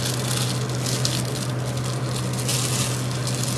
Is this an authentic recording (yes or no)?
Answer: yes